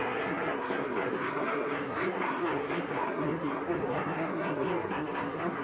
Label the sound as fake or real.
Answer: fake